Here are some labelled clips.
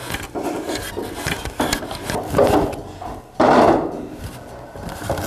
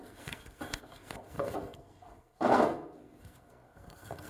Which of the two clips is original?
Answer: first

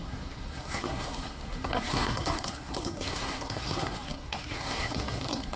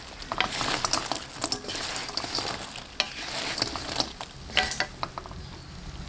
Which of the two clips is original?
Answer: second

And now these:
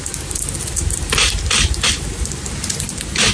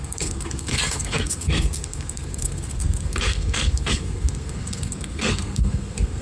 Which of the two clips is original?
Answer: first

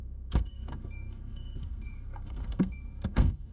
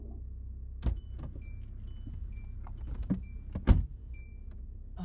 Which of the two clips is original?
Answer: second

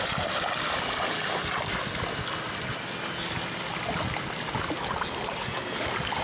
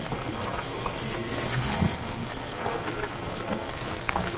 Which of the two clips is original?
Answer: first